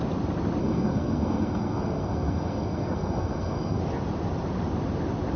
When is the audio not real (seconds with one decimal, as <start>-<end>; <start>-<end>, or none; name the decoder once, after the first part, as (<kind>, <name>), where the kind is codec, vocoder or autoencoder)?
0.6-3.8 (codec, SNAC)